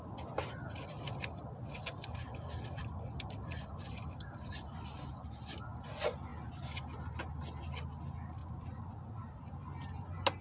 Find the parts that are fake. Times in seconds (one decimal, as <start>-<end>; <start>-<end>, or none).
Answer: 2.8-5.1; 8.4-9.3